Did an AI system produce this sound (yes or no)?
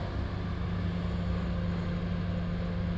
no